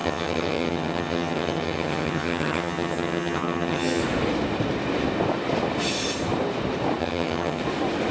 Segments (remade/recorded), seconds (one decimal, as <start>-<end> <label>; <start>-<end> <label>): 0.0-4.0 remade; 4.0-7.0 recorded; 7.0-7.6 remade; 7.6-8.1 recorded